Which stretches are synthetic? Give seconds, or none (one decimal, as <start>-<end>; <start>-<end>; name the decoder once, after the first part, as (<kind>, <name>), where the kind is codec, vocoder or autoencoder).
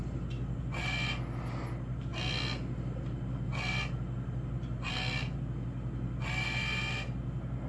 none